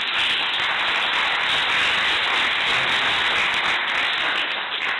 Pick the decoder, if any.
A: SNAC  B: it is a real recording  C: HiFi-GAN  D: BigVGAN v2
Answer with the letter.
B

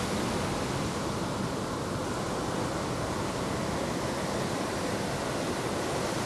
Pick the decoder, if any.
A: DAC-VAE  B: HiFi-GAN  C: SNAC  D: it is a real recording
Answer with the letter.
D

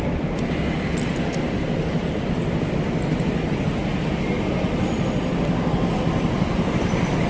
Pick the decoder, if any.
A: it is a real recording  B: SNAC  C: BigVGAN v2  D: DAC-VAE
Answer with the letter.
A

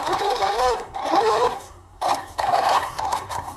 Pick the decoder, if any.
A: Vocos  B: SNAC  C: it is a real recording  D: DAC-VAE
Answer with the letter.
B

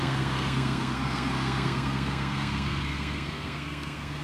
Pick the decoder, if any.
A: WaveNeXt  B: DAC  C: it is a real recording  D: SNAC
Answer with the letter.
D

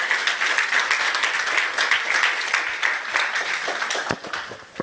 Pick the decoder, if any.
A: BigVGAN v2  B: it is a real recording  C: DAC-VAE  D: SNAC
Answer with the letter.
B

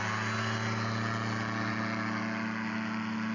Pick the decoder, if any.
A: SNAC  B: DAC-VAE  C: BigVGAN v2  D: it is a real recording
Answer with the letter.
D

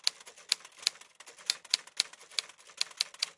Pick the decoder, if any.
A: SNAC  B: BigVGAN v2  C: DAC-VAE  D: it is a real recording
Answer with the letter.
D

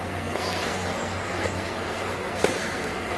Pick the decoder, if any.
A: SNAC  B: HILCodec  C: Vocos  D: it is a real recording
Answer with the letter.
A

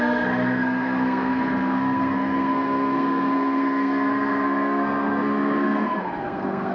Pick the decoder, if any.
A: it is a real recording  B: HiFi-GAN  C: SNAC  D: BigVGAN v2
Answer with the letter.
C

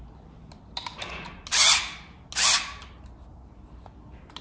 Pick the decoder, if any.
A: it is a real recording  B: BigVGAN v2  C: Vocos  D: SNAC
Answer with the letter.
A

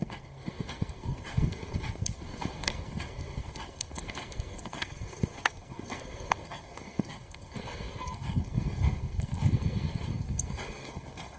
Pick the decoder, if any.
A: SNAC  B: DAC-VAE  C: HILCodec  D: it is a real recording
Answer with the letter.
A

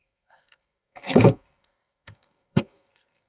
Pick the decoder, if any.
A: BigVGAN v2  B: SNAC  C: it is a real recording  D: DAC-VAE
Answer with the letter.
B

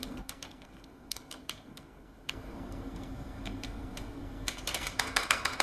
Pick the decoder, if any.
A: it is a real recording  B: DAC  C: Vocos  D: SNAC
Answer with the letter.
D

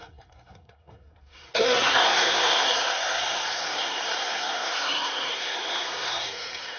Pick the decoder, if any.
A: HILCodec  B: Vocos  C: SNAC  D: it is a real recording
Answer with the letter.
C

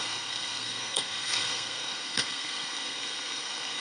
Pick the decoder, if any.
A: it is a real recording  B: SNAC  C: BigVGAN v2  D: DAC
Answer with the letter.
B